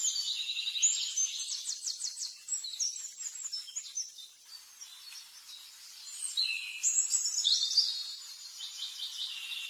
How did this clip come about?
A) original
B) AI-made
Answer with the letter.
A